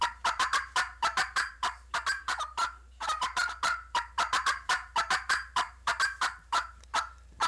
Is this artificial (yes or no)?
yes